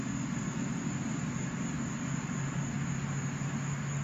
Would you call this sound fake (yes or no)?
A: no